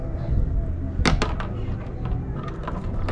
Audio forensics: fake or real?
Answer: real